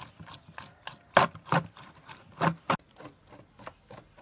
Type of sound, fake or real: real